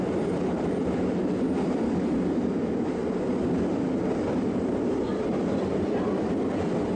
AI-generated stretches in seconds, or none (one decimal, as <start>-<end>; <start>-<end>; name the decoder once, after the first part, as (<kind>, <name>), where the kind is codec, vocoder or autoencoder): 0.0-3.0 (vocoder, BigVGAN v2); 4.4-7.0